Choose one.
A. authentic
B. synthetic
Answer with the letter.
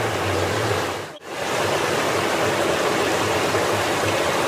A